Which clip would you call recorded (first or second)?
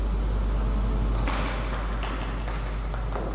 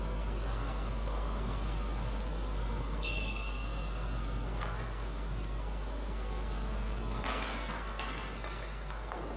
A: first